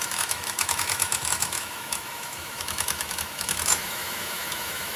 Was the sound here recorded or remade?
remade